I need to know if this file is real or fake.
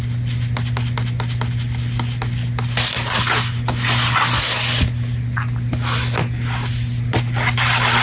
real